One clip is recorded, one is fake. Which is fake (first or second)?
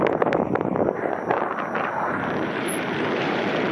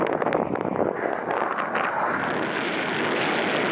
first